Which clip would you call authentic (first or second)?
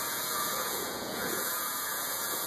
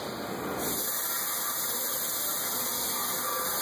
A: second